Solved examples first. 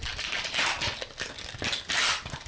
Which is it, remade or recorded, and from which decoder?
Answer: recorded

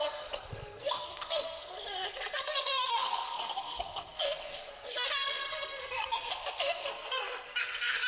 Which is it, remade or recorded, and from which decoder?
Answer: remade, codec, SNAC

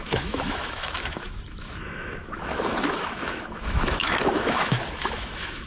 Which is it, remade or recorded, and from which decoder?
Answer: remade, autoencoder, DAC-VAE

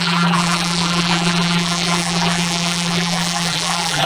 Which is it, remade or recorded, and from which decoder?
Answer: remade, vocoder, BigVGAN v2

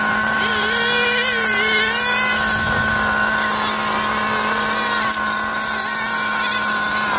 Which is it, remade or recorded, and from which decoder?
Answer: recorded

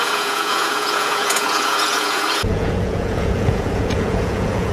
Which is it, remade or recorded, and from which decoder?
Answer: remade, vocoder, Vocos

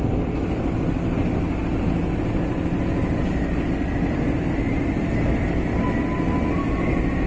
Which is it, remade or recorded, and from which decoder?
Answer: recorded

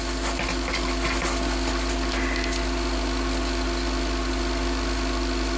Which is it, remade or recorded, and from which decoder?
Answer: recorded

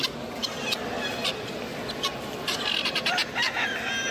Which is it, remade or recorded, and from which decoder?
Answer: recorded